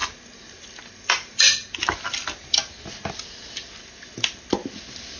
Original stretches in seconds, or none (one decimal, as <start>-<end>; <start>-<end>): 0.0-5.2